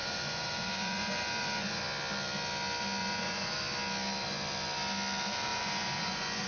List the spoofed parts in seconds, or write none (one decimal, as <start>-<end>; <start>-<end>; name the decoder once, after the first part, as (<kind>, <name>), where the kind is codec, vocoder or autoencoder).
0.0-1.8 (vocoder, Vocos); 3.0-3.6; 5.5-6.5